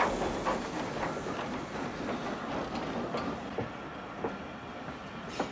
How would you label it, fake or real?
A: real